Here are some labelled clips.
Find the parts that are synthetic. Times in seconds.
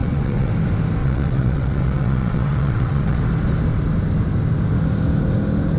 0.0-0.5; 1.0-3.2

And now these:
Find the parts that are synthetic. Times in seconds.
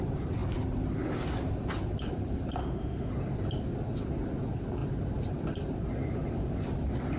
2.6-3.1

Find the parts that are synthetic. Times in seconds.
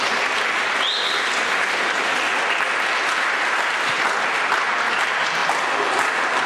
none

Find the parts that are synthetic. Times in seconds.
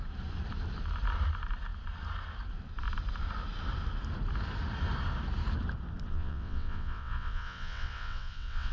6.1-8.7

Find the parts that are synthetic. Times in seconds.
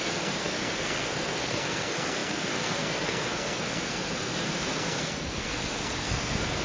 0.0-6.6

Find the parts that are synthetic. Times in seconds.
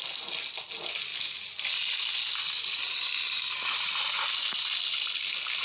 none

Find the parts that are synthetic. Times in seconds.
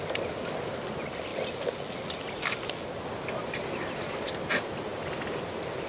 none